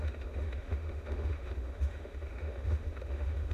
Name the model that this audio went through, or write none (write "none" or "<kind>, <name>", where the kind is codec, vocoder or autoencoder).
autoencoder, DAC-VAE